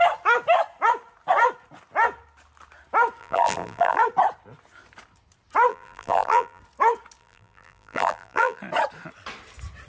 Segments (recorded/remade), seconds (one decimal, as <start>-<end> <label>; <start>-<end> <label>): 0.0-3.2 recorded; 3.2-4.0 remade; 4.0-5.7 recorded; 5.7-6.6 remade; 6.6-7.2 recorded; 7.2-8.6 remade; 8.6-9.9 recorded